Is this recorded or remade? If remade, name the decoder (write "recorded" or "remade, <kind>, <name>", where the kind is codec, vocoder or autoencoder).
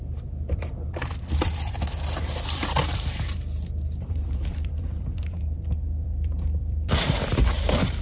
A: remade, vocoder, BigVGAN v2